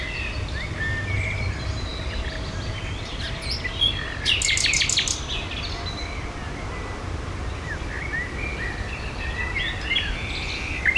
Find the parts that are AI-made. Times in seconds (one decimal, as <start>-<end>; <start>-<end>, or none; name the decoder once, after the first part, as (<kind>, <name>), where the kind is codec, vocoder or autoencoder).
none